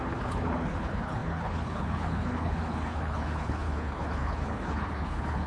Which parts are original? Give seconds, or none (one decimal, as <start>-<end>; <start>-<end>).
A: none